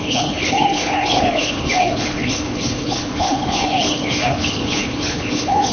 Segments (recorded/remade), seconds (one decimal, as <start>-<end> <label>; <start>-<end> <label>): 0.0-5.7 remade